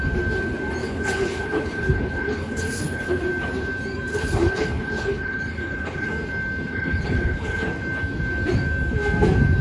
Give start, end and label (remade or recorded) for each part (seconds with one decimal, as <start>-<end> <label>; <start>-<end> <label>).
0.0-0.8 recorded; 0.8-3.2 remade; 3.2-4.1 recorded; 4.1-6.1 remade; 6.1-6.7 recorded; 6.7-7.7 remade; 7.7-9.6 recorded